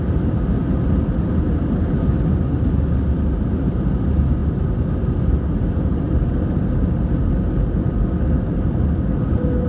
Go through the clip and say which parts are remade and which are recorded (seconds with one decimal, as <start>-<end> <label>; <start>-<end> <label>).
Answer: 0.0-9.7 recorded